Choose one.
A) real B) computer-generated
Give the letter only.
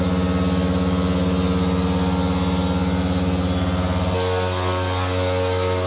A